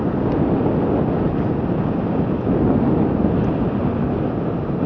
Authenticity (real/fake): real